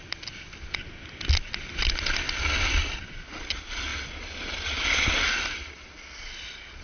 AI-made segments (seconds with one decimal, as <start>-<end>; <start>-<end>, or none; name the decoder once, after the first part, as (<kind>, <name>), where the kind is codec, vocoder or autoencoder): none